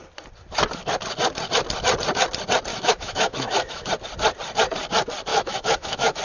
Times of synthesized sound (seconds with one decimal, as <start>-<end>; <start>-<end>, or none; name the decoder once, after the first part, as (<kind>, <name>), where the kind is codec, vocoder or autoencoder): 2.7-3.9 (autoencoder, DAC-VAE); 5.3-6.2